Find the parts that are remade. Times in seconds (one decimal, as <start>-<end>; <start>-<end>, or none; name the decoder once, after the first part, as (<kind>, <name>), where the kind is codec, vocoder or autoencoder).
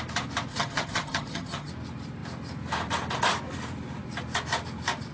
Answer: 0.5-1.7 (vocoder, HiFi-GAN)